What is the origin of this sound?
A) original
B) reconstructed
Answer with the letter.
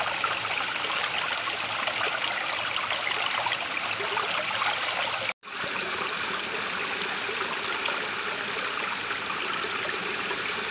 A